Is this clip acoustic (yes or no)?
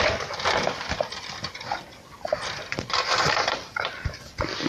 no